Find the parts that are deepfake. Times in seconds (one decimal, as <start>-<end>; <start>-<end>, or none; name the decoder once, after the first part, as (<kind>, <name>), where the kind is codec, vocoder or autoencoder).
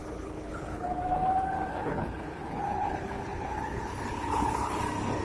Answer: 0.0-1.0 (codec, HILCodec); 1.7-4.8